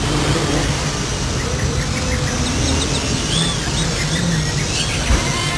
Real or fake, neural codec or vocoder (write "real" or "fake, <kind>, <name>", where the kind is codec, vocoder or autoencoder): real